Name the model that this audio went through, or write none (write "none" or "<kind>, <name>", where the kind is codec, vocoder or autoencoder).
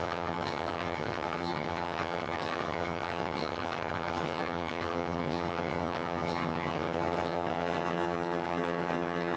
vocoder, HiFi-GAN